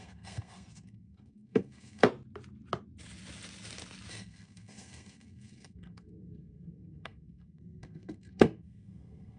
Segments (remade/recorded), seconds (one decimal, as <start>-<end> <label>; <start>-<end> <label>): 0.0-2.0 remade; 2.0-4.1 recorded; 4.1-9.4 remade